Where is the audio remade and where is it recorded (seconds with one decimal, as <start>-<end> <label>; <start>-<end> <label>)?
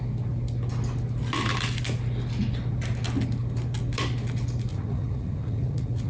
0.0-4.7 recorded; 4.7-6.1 remade